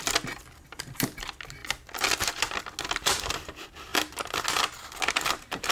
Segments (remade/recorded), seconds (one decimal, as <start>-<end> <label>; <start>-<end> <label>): 0.0-5.7 recorded